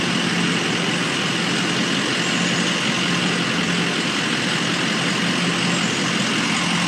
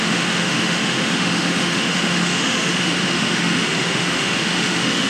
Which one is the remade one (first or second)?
second